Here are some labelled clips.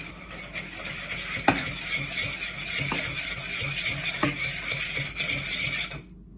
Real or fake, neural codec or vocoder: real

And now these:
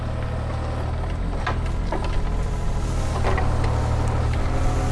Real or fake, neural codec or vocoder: real